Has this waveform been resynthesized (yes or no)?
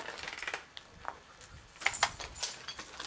no